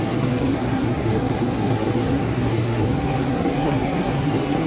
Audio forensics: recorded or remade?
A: remade